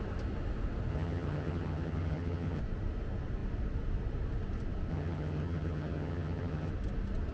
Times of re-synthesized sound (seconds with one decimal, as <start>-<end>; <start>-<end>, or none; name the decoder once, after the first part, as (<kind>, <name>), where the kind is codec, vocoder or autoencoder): 0.9-2.6 (vocoder, HiFi-GAN); 4.9-6.7